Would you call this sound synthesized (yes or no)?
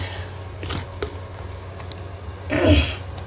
no